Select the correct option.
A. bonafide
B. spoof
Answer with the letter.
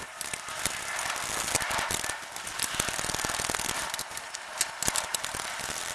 A